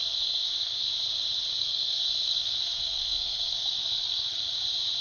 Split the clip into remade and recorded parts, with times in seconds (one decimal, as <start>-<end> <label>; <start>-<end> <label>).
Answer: 0.0-0.9 remade; 0.9-1.6 recorded; 1.6-4.6 remade; 4.6-5.0 recorded